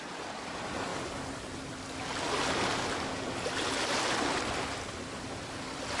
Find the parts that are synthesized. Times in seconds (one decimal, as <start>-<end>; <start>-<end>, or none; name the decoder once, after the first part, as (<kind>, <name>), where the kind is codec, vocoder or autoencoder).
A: none